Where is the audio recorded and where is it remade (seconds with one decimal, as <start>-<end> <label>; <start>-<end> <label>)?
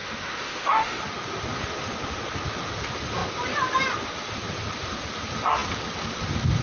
0.0-1.0 remade; 1.0-6.6 recorded